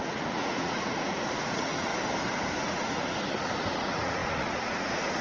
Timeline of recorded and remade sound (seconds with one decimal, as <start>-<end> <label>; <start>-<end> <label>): 0.0-1.9 remade; 1.9-2.6 recorded; 2.6-5.2 remade